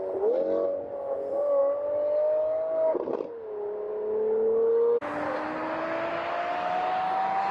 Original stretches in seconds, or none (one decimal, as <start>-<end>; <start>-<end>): 0.0-7.5